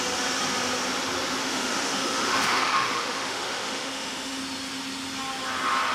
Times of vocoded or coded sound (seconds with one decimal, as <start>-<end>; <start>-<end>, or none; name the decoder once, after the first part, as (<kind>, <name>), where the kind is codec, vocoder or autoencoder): 1.4-4.4 (autoencoder, DAC-VAE)